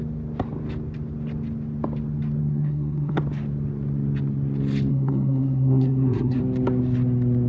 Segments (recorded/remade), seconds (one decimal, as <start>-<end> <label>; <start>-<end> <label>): 0.0-2.4 recorded; 2.4-3.2 remade; 3.2-4.9 recorded; 4.9-6.4 remade; 6.4-7.5 recorded